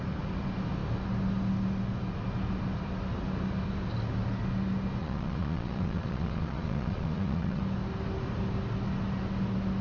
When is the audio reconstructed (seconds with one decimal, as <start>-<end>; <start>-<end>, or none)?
5.0-7.6